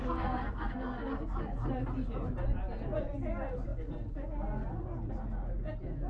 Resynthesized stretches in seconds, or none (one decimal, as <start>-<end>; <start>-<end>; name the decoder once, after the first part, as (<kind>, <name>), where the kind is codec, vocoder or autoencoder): 0.0-1.1 (codec, SNAC)

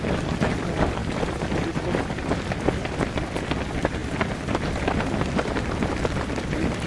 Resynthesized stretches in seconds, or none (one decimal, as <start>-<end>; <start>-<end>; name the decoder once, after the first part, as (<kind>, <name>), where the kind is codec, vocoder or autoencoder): none

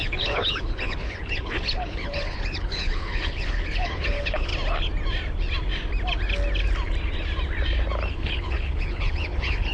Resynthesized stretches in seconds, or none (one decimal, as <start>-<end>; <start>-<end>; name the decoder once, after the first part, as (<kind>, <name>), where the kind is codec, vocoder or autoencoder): 0.0-4.5 (codec, HILCodec); 8.1-9.7

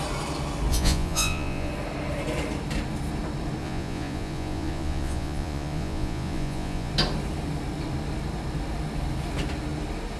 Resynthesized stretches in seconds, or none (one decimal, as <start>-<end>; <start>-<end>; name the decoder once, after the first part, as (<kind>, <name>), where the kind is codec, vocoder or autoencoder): 0.7-1.7 (vocoder, Vocos); 3.6-6.9

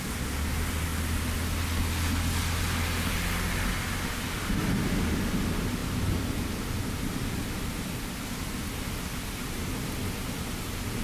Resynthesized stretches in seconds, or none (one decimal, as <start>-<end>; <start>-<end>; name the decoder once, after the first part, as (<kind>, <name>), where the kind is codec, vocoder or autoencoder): none